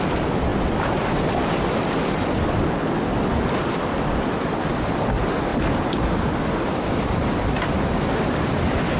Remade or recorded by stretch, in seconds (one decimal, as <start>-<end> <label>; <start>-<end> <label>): 0.0-9.0 recorded